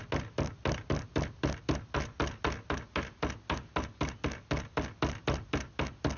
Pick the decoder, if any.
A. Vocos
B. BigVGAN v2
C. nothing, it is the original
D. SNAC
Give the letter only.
C